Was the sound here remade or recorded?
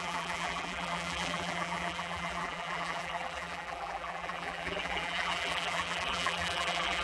remade